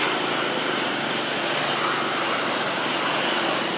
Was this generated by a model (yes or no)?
no